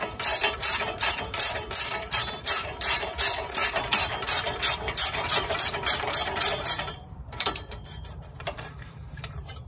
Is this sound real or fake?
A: fake